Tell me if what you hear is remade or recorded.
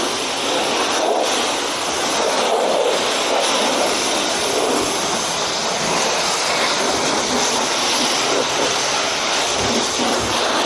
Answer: recorded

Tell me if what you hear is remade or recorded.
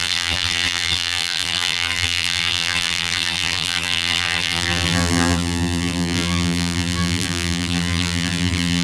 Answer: remade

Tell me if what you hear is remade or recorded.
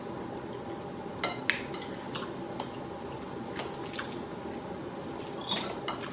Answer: recorded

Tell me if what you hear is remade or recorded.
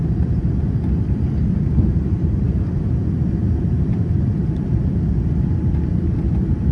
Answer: remade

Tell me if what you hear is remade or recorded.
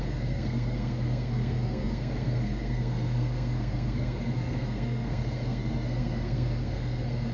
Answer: remade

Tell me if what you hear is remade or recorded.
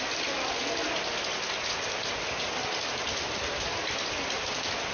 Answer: recorded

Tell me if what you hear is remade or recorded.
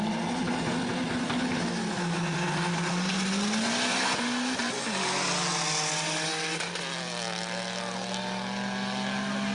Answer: recorded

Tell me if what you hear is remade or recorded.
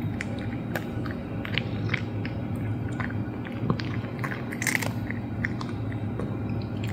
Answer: recorded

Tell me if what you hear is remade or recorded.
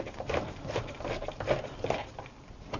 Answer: recorded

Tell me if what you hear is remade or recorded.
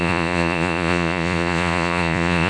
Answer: remade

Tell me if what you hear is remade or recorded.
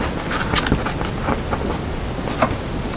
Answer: recorded